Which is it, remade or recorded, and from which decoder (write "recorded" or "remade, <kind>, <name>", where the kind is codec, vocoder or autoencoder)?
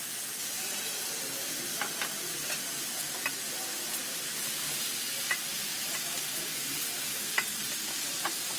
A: recorded